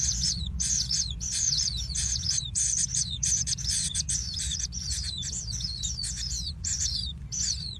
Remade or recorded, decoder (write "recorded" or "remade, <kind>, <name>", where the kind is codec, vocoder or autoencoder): remade, vocoder, Vocos